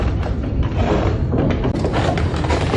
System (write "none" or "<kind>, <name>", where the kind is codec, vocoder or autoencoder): vocoder, BigVGAN v2